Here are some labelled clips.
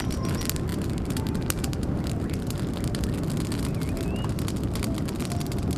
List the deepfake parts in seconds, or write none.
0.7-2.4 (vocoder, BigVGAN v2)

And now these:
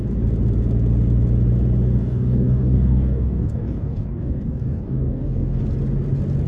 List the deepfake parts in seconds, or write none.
2.0-5.6 (codec, DAC)

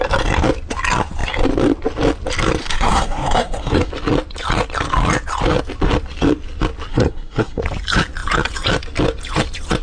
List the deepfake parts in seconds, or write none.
2.6-3.9 (codec, SNAC); 6.9-7.6